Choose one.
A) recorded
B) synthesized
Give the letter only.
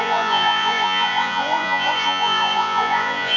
B